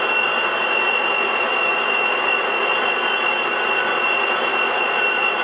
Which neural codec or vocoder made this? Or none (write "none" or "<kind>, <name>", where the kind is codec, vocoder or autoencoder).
none